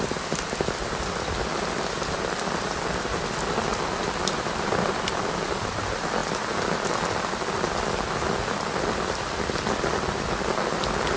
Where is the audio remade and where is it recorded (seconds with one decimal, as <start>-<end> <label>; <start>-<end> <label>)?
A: 0.0-11.2 recorded